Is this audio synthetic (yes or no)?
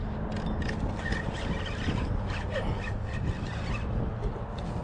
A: no